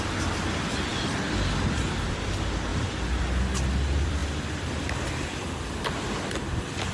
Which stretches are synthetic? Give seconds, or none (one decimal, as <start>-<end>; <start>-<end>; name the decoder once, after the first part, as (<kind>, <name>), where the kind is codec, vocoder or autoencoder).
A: 0.0-2.7 (vocoder, BigVGAN v2); 3.7-6.9